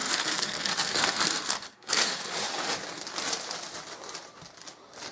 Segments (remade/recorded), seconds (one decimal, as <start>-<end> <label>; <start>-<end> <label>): 0.0-2.3 remade; 2.3-5.1 recorded